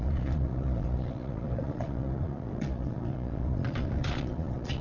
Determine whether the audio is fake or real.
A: fake